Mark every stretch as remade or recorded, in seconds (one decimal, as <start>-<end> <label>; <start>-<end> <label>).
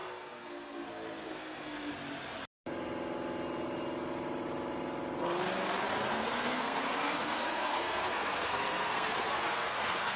0.0-1.9 remade; 1.9-6.1 recorded; 6.1-10.2 remade